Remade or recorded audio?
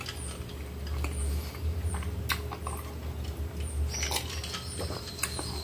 recorded